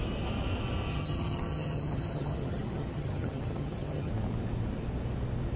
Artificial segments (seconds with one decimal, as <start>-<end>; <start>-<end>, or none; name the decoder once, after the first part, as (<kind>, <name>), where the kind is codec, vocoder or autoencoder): 0.9-4.1 (vocoder, HiFi-GAN)